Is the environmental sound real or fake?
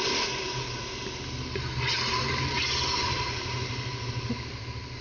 real